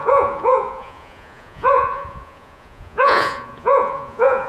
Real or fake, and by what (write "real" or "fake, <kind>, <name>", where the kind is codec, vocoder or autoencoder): fake, vocoder, Vocos